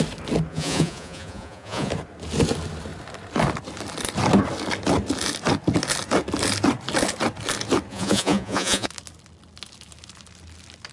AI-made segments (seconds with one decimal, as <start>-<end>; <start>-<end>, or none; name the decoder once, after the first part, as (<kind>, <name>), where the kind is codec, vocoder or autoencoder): 0.5-1.9 (vocoder, Vocos); 7.9-8.9